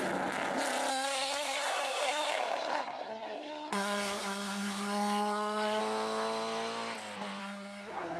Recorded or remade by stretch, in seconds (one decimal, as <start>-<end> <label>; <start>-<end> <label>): 0.0-0.9 recorded; 0.9-5.8 remade; 5.8-7.4 recorded; 7.4-8.2 remade